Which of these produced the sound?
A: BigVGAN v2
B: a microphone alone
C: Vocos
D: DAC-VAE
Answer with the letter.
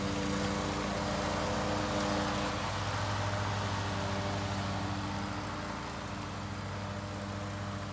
B